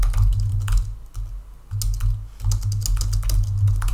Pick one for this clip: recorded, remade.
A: recorded